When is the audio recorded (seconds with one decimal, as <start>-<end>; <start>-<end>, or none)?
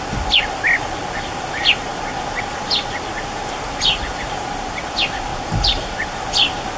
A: 0.0-5.3; 6.1-6.8